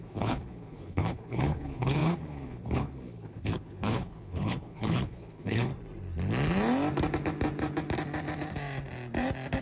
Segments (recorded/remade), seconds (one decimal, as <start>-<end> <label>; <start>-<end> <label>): 0.0-5.7 remade; 5.7-9.6 recorded